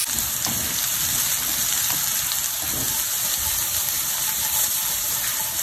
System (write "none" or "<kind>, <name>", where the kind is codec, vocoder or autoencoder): none